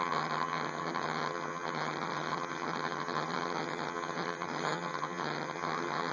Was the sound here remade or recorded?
remade